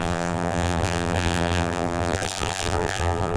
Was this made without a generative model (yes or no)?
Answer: no